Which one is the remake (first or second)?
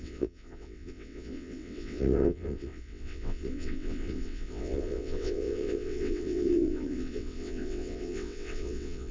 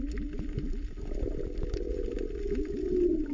first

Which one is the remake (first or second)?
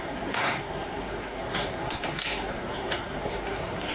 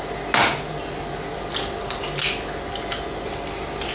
first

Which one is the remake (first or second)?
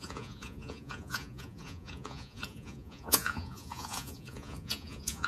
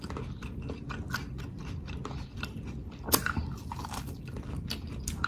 first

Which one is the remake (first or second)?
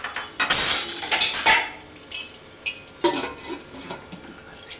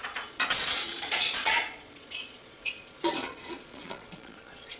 second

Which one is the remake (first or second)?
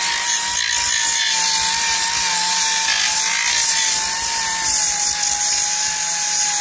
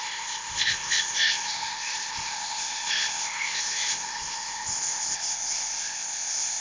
second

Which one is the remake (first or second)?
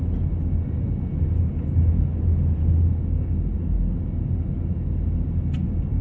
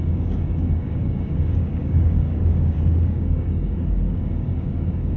second